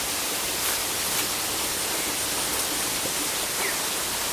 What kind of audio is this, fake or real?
real